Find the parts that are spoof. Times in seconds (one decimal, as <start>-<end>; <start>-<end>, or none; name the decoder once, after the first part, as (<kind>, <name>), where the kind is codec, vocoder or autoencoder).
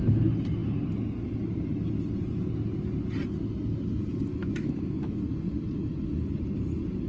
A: 4.4-5.2 (autoencoder, DAC-VAE)